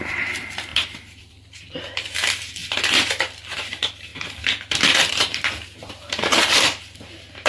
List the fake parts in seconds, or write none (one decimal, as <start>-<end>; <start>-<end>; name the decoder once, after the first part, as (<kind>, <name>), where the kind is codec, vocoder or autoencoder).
0.0-2.6 (vocoder, BigVGAN v2); 3.2-4.1; 5.1-7.5

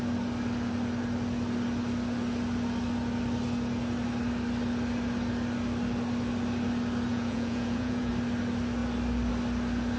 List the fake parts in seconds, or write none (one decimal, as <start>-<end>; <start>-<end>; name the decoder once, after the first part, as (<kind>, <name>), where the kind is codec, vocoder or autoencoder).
7.1-8.1 (vocoder, Vocos)

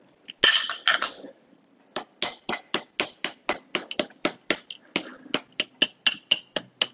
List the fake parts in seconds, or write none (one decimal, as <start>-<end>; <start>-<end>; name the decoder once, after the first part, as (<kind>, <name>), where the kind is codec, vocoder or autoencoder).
none

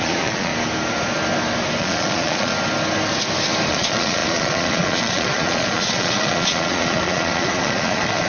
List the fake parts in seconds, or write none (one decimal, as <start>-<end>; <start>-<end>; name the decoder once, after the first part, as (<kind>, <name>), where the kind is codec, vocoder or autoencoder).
0.0-0.5 (vocoder, Vocos); 1.8-2.5; 3.7-8.3

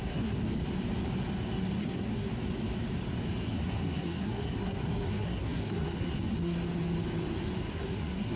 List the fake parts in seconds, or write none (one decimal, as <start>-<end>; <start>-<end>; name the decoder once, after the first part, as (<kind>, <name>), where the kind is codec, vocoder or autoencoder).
0.0-0.4 (codec, SNAC); 1.8-2.3; 3.5-6.6; 7.7-8.4

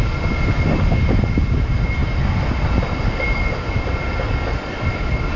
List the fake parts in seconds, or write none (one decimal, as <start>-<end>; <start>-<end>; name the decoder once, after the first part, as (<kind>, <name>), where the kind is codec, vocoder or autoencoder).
none

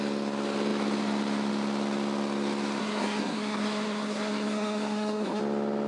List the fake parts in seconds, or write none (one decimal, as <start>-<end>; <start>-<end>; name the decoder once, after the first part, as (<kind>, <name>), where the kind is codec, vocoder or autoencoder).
2.8-5.4 (codec, SNAC)

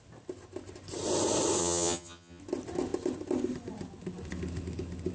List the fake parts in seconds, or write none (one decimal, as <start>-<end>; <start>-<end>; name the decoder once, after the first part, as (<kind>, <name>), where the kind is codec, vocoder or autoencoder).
1.6-2.4 (vocoder, HiFi-GAN)